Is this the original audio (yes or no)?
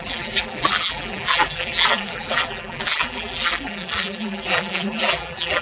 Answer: no